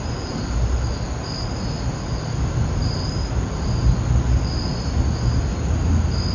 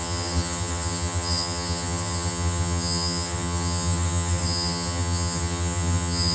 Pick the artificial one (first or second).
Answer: second